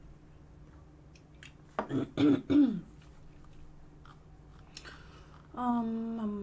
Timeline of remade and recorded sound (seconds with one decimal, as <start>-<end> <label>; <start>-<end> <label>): 0.0-6.4 recorded